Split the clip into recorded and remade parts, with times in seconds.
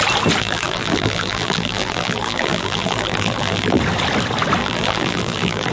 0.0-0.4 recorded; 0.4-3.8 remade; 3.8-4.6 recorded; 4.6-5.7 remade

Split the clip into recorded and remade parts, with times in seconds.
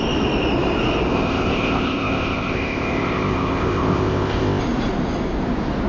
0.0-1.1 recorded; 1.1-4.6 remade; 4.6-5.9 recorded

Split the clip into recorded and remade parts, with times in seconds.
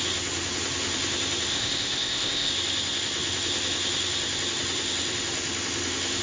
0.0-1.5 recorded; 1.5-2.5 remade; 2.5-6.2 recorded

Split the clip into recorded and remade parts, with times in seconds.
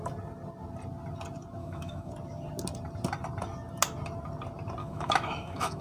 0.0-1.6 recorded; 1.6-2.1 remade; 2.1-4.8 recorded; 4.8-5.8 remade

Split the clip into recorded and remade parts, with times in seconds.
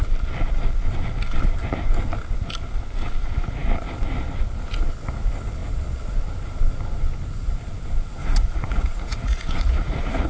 0.0-8.2 recorded; 8.2-10.3 remade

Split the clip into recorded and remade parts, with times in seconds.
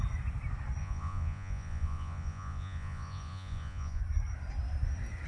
0.0-0.8 recorded; 0.8-4.0 remade; 4.0-5.3 recorded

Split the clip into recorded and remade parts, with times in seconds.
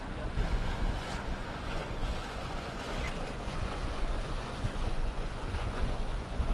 0.0-6.5 remade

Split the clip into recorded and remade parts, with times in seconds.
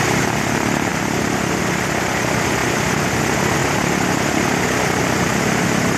0.0-6.0 recorded